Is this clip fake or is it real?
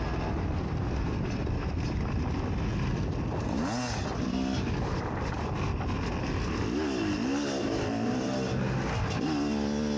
real